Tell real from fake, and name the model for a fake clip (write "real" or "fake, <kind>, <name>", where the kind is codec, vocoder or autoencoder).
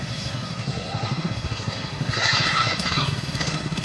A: fake, codec, SNAC